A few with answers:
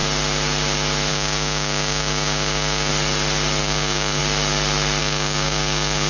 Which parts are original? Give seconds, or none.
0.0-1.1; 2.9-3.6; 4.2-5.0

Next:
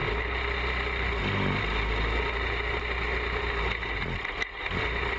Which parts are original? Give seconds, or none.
0.0-5.2

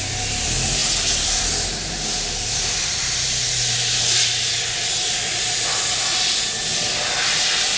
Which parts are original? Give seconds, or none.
0.0-7.8

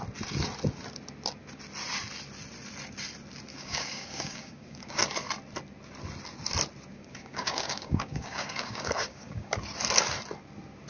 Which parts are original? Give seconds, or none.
0.0-3.5; 5.0-6.9; 9.5-10.9

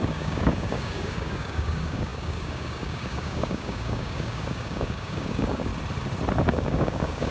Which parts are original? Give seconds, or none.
5.7-6.5

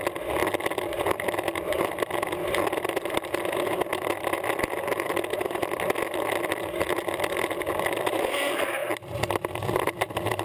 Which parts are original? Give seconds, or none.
0.0-10.4